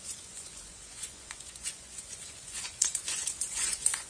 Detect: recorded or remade remade